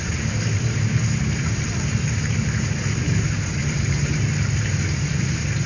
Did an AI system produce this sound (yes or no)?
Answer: yes